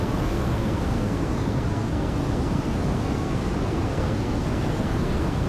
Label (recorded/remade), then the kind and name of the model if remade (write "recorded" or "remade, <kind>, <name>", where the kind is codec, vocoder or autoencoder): remade, codec, SNAC